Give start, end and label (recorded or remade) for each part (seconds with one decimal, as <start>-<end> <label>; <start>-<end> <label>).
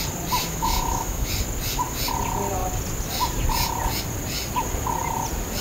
0.0-0.4 recorded; 0.4-1.3 remade; 1.3-5.6 recorded